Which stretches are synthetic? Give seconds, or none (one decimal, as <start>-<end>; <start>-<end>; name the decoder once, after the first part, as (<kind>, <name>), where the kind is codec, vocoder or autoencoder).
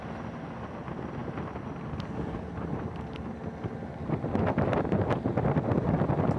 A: none